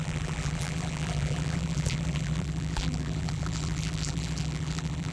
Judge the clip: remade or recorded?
remade